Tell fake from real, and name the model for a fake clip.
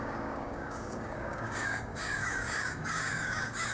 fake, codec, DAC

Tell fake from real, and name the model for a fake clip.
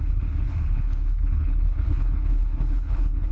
fake, codec, HILCodec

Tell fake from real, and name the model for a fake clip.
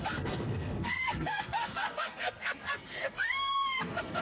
fake, codec, SNAC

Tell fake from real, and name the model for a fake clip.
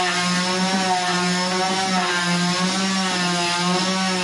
real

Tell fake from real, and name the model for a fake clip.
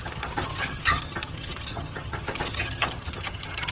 fake, vocoder, HiFi-GAN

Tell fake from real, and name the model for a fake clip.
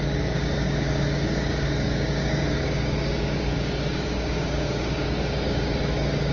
fake, codec, DAC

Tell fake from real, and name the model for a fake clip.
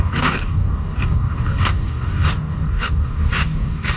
fake, codec, DAC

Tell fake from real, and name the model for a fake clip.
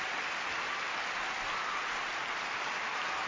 real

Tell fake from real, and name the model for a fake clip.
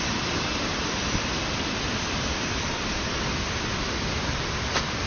real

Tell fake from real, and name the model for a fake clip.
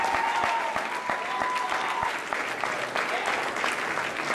real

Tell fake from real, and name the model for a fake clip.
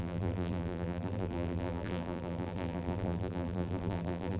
fake, vocoder, BigVGAN v2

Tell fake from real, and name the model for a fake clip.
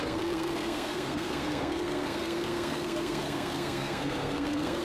fake, codec, SNAC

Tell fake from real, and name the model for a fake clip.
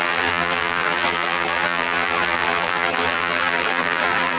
fake, vocoder, BigVGAN v2